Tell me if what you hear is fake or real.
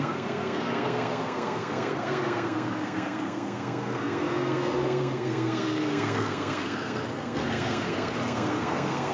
fake